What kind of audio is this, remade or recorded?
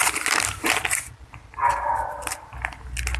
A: recorded